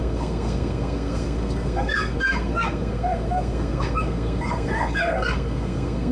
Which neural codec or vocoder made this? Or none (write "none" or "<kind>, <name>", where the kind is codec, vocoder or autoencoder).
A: codec, SNAC